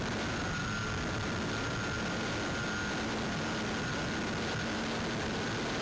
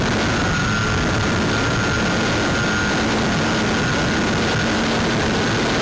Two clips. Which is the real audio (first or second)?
second